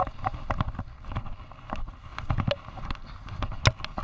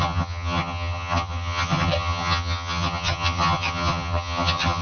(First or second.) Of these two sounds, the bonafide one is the first